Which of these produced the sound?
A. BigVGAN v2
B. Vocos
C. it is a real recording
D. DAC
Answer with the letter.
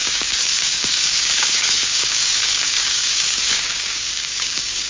D